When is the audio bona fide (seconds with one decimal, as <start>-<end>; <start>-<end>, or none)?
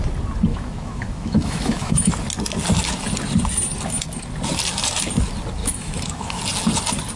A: 0.0-0.5; 2.1-5.6; 6.4-7.2